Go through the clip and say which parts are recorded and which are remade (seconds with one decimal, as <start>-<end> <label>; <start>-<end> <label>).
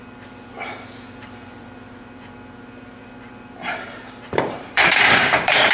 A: 0.0-5.7 remade